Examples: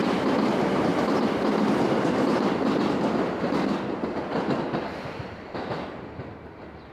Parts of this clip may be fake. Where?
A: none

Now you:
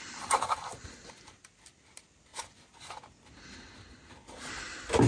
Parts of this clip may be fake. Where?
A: none

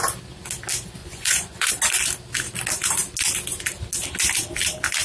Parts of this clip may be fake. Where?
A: 1.0-1.7 (vocoder, Vocos)

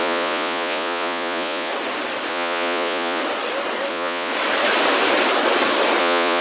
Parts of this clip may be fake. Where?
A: 0.0-1.7 (vocoder, Vocos); 2.3-3.2; 3.9-4.3; 6.0-6.4

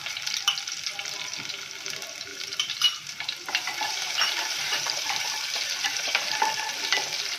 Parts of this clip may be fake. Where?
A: 2.3-6.4 (vocoder, BigVGAN v2)

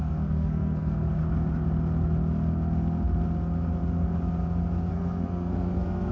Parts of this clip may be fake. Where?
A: 0.0-1.2 (codec, SNAC); 4.9-6.1

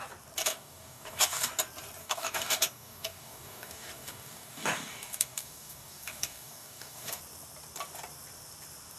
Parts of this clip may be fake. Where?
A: 0.4-1.5 (codec, DAC); 2.0-7.2